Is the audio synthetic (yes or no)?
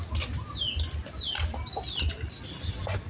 no